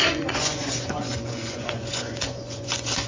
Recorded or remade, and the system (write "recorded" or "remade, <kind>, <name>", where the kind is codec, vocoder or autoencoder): remade, vocoder, Vocos